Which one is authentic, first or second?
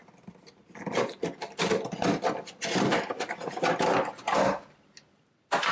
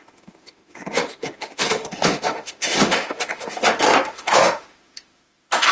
first